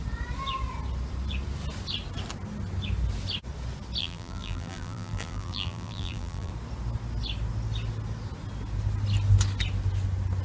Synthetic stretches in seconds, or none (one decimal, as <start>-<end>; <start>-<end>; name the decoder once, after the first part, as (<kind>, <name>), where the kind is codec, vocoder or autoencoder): 4.0-6.5 (vocoder, BigVGAN v2)